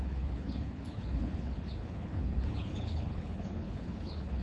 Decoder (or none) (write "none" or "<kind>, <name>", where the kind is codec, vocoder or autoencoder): codec, HILCodec